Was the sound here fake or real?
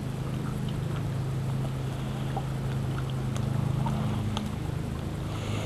real